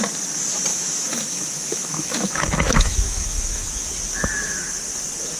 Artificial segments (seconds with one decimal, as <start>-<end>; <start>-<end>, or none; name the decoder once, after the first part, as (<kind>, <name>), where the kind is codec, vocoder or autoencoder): 0.7-3.9 (autoencoder, DAC-VAE)